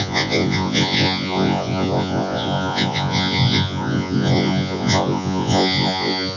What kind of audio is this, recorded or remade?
remade